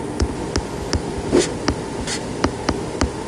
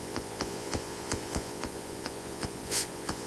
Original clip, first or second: first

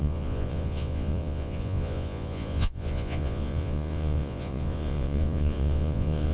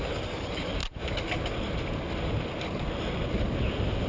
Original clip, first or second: second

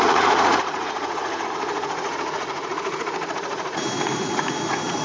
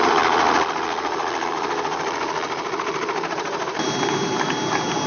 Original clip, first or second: second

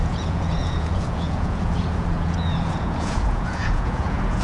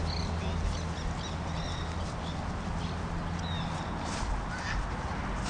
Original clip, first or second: second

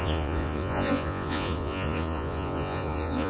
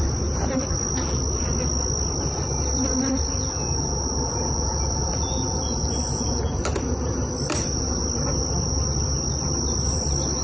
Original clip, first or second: second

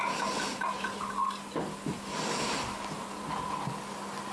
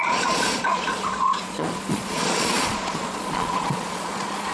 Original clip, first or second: first